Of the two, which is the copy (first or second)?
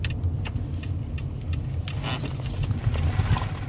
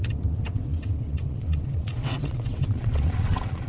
second